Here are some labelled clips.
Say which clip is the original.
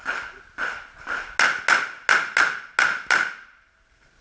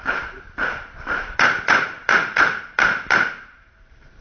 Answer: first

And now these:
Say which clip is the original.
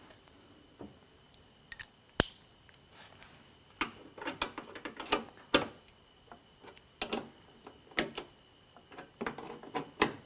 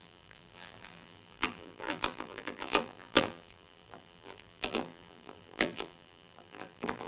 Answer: first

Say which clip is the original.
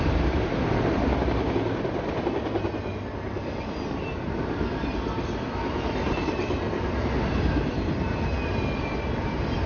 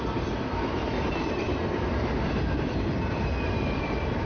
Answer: first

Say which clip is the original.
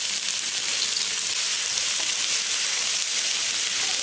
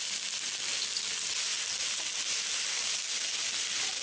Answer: second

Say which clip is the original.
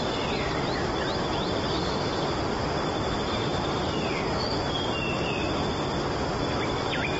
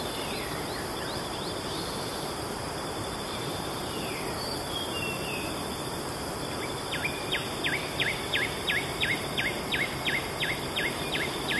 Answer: first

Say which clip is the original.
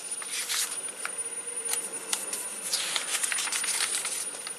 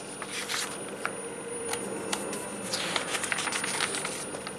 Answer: second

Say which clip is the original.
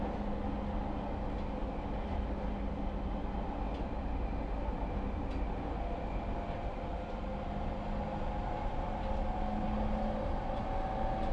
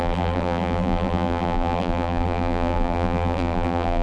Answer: first